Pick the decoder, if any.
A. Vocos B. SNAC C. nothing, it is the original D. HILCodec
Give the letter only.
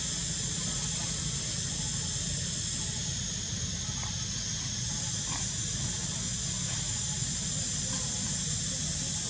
C